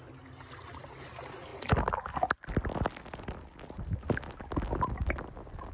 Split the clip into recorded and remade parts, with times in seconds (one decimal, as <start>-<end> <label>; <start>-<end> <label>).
0.0-5.7 recorded